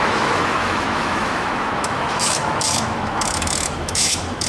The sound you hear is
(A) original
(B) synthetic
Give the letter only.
B